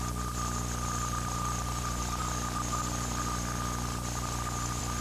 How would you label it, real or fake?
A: real